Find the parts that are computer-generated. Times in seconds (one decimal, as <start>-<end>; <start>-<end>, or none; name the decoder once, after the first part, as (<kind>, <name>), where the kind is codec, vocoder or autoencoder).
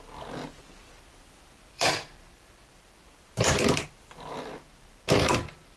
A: 0.0-4.3 (vocoder, BigVGAN v2)